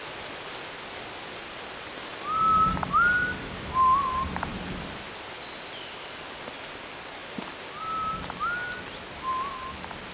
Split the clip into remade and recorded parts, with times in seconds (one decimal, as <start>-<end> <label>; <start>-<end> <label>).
0.0-7.2 recorded; 7.2-7.8 remade; 7.8-10.1 recorded